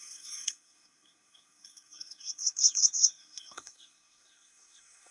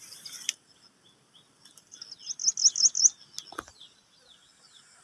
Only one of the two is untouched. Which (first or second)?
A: second